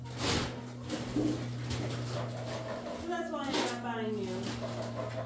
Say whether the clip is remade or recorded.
recorded